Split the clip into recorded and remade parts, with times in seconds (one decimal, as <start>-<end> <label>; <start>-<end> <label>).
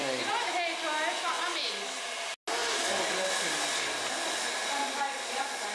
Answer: 0.0-5.7 recorded